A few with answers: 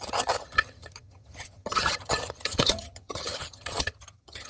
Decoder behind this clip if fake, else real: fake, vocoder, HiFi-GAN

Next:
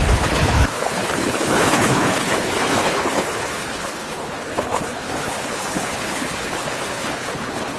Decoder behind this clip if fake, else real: fake, codec, HILCodec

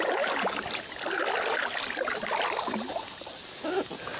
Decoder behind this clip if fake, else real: real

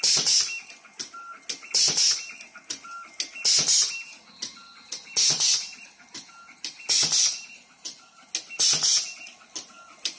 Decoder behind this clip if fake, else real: real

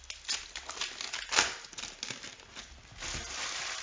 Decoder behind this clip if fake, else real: real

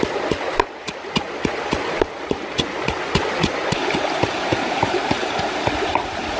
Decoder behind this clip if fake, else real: real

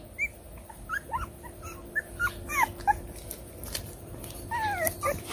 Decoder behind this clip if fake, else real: real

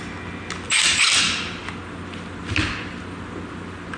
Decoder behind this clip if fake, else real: real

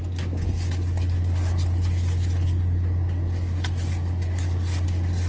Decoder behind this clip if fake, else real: real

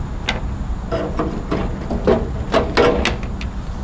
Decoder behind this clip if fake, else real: real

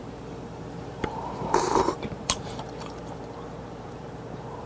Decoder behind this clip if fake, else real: fake, vocoder, BigVGAN v2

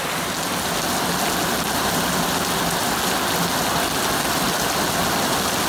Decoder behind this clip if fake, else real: real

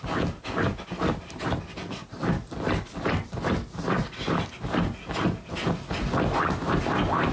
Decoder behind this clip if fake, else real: real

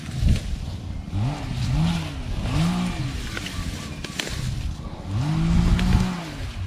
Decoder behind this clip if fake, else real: real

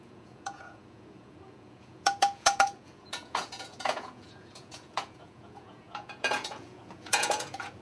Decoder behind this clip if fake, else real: fake, vocoder, Vocos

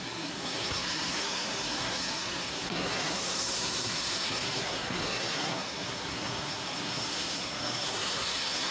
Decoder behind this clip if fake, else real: fake, codec, SNAC